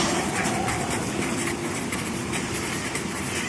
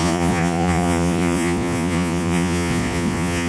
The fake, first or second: second